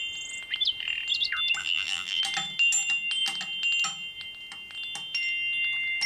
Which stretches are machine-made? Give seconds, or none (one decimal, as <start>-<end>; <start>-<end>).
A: 1.6-2.2